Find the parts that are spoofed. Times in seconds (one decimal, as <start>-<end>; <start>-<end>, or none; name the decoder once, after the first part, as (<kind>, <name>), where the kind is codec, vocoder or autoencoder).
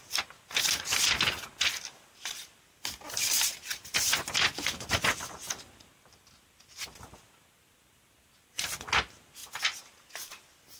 none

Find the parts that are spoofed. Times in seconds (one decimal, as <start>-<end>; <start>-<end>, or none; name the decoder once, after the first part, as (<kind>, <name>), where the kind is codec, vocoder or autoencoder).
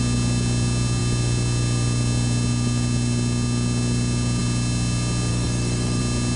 5.3-6.0 (autoencoder, DAC-VAE)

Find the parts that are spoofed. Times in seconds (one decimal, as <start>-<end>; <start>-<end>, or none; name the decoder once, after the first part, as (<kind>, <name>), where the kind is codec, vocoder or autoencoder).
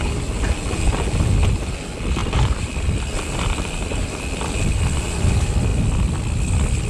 2.2-4.0 (vocoder, BigVGAN v2)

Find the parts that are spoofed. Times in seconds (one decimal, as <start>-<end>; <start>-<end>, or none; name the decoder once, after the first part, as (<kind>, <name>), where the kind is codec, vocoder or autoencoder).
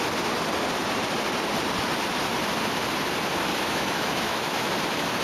3.5-4.7 (autoencoder, DAC-VAE)